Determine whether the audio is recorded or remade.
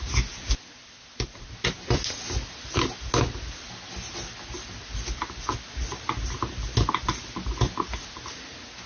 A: recorded